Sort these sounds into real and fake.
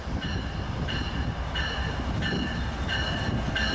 real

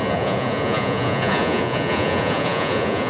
fake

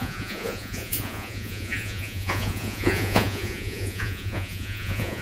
fake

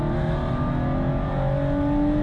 real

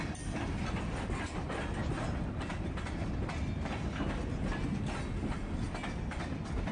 real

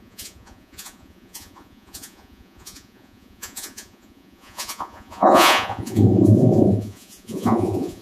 fake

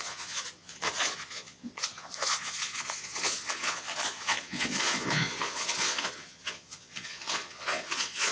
fake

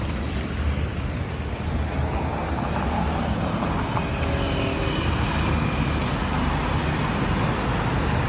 real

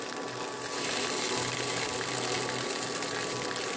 real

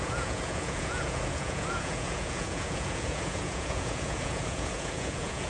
fake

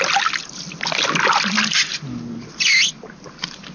real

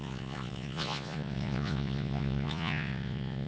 fake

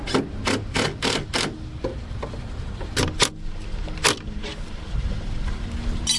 real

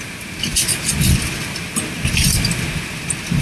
real